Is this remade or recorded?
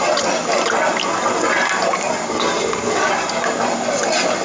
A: recorded